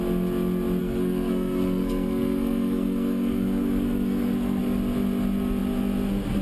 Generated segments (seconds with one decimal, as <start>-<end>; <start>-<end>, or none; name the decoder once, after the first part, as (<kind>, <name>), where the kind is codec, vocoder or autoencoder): 0.8-4.6 (codec, SNAC)